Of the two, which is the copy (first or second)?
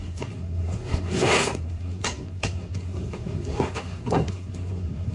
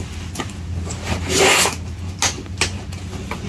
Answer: first